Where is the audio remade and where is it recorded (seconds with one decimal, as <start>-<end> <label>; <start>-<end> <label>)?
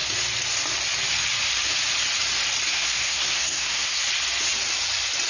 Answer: 0.0-2.7 recorded; 2.7-4.0 remade; 4.0-5.3 recorded